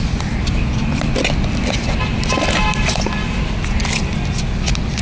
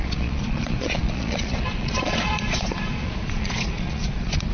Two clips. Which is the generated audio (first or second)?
second